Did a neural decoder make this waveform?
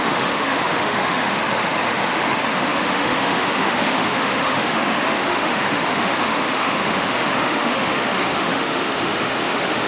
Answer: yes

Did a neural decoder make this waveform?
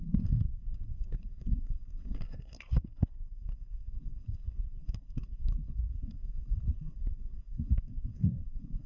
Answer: yes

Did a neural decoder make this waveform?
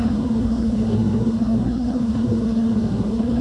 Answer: yes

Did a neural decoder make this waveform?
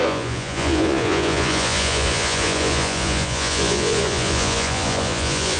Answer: yes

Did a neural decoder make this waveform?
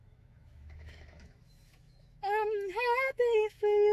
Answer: yes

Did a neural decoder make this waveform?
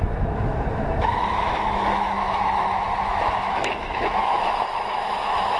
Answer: yes